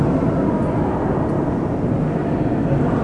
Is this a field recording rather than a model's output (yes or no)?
yes